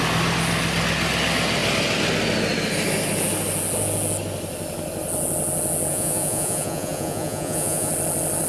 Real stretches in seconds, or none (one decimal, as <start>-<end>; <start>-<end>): 0.0-5.9; 7.9-8.5